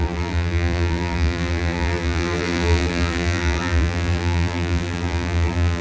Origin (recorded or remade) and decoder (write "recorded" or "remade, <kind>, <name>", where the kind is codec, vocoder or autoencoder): remade, vocoder, BigVGAN v2